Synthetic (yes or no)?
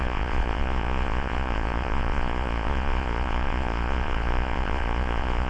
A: yes